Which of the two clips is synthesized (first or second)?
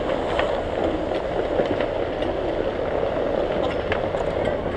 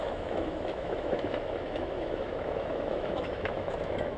second